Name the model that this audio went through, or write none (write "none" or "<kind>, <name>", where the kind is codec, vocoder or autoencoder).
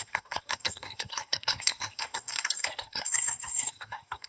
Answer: codec, SNAC